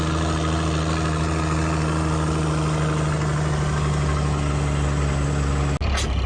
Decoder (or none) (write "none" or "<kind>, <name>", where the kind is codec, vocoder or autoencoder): none